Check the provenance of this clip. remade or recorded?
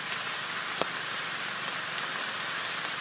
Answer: recorded